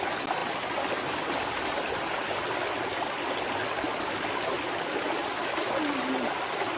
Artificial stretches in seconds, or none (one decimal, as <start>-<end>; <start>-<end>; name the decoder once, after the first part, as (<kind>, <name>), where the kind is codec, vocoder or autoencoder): none